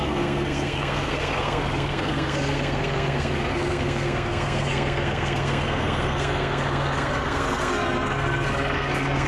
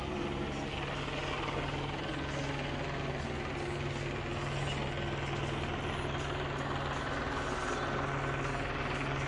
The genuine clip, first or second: second